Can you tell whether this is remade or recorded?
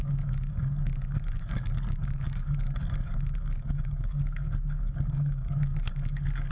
remade